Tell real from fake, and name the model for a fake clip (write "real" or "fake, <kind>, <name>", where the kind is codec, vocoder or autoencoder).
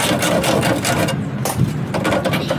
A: real